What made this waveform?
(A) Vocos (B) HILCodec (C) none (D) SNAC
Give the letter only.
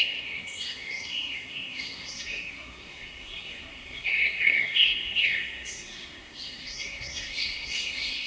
D